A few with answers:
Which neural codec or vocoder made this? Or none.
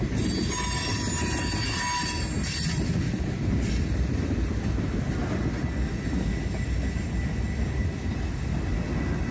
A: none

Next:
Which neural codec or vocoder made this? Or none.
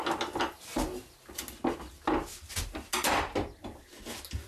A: none